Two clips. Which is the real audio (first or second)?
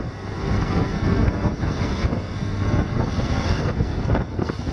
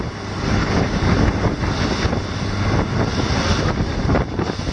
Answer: second